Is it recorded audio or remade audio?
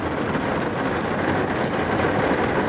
recorded